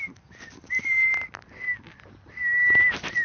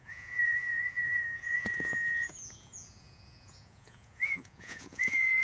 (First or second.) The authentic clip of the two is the first